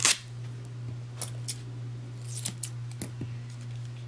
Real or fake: real